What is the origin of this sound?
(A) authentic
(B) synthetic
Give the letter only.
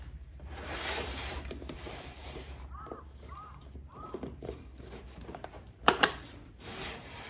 B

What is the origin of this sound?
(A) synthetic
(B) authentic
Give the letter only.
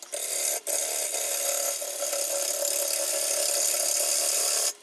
B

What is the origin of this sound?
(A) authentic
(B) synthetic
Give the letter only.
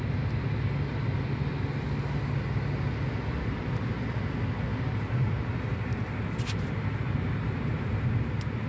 A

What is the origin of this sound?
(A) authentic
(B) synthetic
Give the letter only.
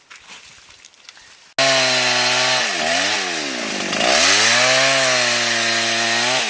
A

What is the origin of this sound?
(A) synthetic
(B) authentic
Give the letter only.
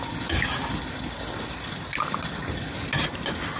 B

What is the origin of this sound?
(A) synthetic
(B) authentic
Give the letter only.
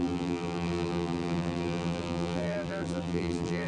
A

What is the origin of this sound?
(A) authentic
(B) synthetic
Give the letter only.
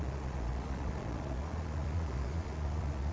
B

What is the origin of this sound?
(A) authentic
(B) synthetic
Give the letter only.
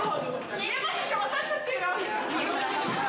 A